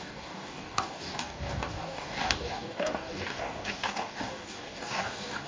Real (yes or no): no